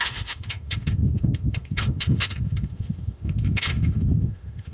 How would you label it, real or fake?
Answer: fake